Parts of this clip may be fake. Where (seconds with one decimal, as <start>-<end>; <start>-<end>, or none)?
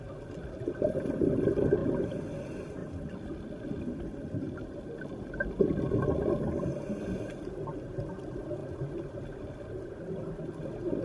1.8-2.4; 2.8-3.8; 8.6-11.0